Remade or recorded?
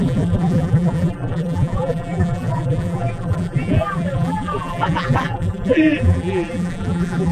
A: remade